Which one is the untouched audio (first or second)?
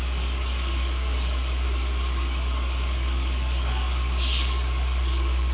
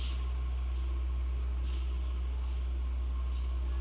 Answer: second